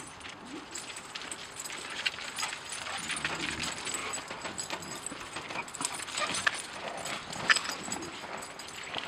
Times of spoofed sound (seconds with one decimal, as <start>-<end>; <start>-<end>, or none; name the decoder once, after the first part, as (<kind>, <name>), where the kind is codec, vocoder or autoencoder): none